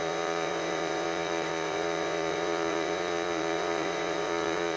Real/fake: fake